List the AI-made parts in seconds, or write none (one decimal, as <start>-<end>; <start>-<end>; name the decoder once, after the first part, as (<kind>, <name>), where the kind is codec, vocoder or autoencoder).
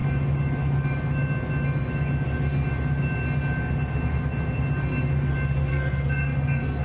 5.7-6.8 (codec, SNAC)